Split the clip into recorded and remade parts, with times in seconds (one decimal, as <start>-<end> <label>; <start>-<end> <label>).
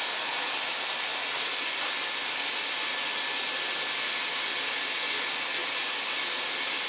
0.0-6.9 recorded